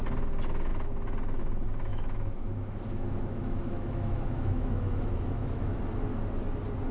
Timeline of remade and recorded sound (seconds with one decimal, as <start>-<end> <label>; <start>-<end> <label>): 0.0-1.9 recorded; 1.9-5.8 remade; 5.8-6.9 recorded